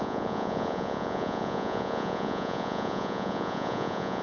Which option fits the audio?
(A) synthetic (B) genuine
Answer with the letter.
A